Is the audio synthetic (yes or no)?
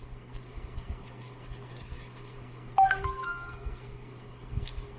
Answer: yes